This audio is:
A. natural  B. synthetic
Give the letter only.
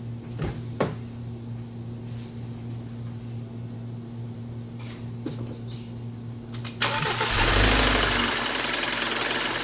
A